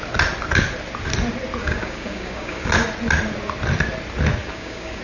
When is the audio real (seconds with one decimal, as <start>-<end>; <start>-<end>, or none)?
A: 0.0-1.6; 2.7-4.4